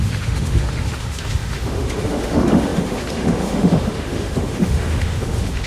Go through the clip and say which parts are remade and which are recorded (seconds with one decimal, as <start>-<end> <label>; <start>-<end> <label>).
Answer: 0.0-5.7 remade